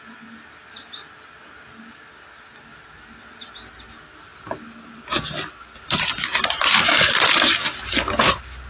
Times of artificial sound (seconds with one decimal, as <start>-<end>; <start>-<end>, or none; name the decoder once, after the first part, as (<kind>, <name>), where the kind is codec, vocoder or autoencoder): none